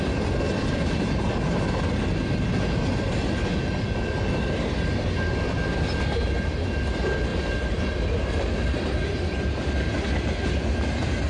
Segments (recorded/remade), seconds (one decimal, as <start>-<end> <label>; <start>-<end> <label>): 0.0-11.3 recorded